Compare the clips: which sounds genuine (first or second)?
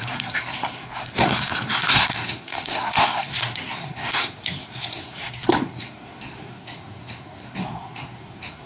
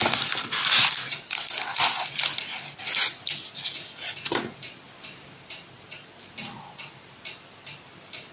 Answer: second